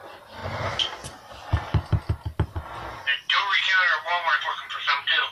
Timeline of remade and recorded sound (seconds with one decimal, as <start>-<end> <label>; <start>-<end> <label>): 0.0-5.3 recorded